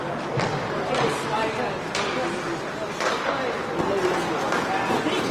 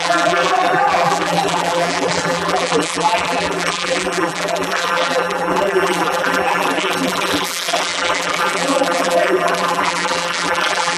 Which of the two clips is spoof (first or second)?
second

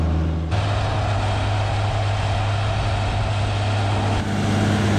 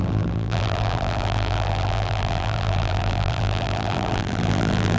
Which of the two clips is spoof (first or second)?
second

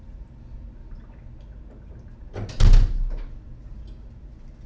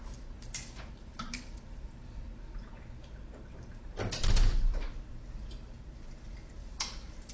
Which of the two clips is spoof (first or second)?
second